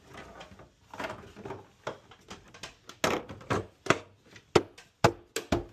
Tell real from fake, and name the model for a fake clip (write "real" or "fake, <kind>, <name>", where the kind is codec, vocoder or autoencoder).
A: real